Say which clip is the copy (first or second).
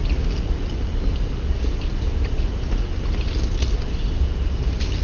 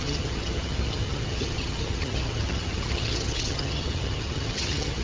second